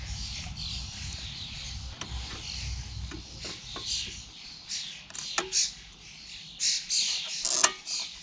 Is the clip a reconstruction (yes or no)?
no